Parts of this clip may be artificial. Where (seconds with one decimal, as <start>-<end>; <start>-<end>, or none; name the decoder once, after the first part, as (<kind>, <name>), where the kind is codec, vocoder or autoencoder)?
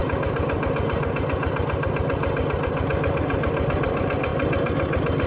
none